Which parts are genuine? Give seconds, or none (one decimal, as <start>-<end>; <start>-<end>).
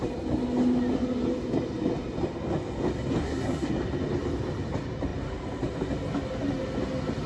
0.0-3.2; 3.7-7.3